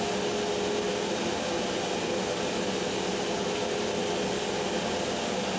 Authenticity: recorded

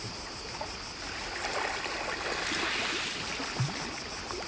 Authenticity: recorded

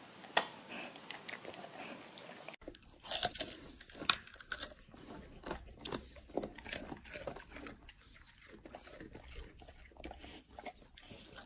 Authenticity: recorded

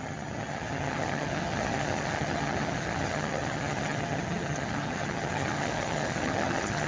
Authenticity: remade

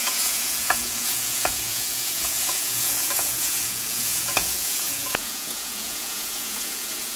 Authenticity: remade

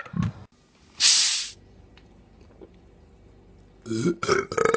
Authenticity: recorded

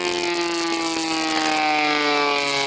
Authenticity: recorded